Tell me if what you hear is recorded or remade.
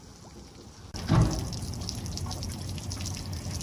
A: recorded